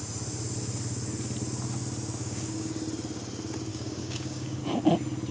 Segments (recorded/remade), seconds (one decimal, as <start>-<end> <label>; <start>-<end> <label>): 0.0-2.2 recorded; 2.2-2.7 remade; 2.7-3.7 recorded; 3.7-4.6 remade; 4.6-5.3 recorded